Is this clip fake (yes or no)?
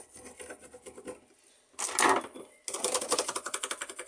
no